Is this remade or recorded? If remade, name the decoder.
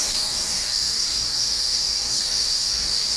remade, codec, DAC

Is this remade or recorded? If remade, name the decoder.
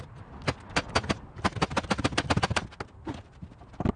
recorded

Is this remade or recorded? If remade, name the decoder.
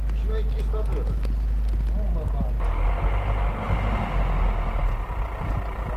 recorded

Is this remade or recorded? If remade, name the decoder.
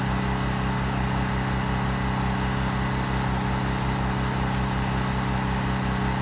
recorded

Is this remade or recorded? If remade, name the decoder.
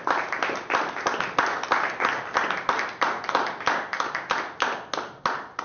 recorded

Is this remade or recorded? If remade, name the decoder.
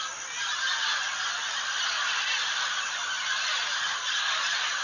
recorded